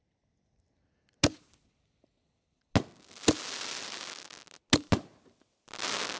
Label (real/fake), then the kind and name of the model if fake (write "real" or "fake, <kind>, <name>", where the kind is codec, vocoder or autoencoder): real